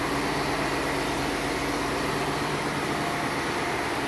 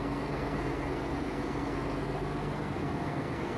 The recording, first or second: first